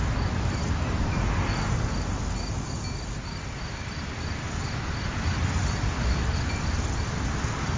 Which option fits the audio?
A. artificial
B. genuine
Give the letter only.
B